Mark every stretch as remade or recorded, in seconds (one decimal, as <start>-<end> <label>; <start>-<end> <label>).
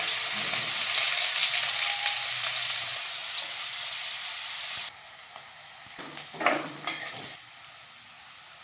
0.0-1.4 remade; 1.4-2.0 recorded; 2.0-2.9 remade; 2.9-6.3 recorded; 6.3-8.6 remade